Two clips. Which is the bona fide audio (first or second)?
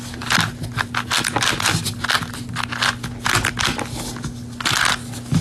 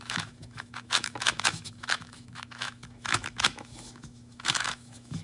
first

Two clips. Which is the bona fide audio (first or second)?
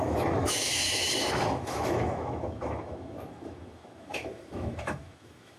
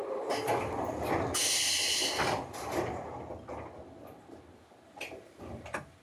second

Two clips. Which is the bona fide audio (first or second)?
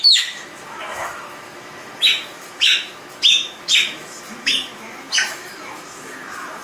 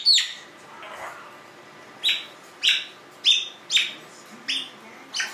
second